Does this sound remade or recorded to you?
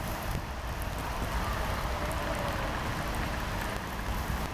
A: recorded